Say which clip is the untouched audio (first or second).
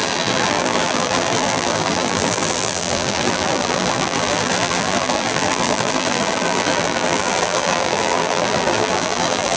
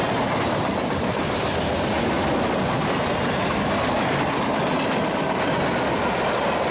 second